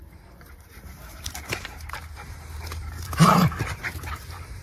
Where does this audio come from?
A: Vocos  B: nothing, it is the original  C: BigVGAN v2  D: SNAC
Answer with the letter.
C